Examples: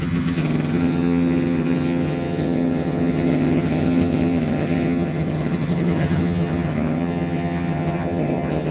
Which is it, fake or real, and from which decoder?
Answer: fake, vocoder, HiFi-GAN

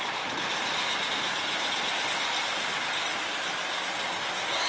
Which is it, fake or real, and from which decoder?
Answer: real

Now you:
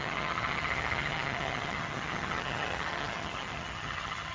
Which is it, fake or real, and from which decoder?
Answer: fake, vocoder, HiFi-GAN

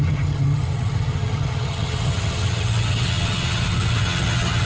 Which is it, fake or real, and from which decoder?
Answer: fake, vocoder, HiFi-GAN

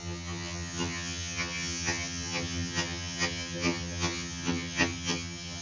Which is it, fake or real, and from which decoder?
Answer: fake, vocoder, HiFi-GAN